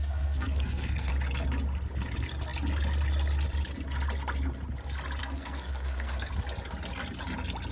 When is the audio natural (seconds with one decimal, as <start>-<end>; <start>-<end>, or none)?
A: 1.1-5.2; 6.3-7.7